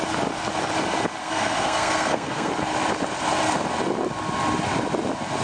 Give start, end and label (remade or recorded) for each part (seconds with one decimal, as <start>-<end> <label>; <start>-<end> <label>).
0.0-1.2 recorded; 1.2-2.5 remade; 2.5-5.4 recorded